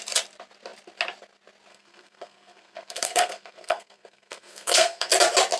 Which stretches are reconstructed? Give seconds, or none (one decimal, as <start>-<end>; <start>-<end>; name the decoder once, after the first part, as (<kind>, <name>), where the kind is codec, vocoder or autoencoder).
1.7-5.1 (codec, SNAC)